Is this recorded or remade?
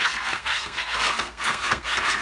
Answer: remade